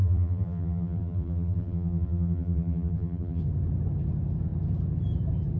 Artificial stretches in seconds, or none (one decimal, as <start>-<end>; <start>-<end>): 0.0-3.4